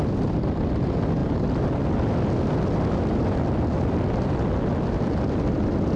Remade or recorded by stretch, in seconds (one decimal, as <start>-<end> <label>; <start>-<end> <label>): 0.0-6.0 recorded